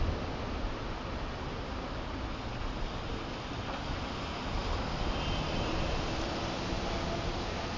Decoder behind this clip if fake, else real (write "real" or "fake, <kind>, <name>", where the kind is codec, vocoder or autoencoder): real